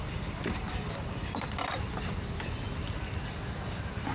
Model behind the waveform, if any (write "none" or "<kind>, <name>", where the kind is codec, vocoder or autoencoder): none